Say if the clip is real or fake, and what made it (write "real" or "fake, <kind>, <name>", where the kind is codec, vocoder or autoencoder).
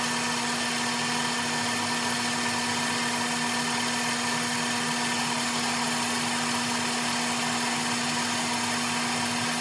real